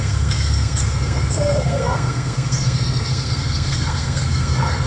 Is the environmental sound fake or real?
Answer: fake